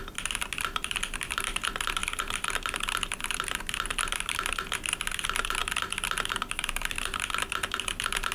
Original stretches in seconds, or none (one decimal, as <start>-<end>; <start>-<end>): 0.0-8.3